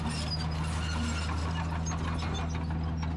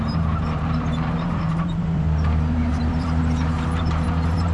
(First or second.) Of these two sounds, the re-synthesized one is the second